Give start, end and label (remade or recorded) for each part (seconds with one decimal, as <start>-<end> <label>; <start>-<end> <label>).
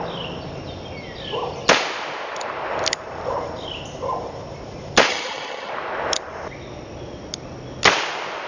0.0-5.1 recorded; 5.1-5.7 remade; 5.7-8.5 recorded